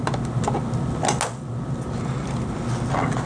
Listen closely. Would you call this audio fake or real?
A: real